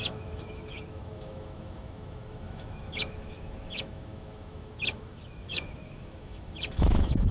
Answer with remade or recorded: remade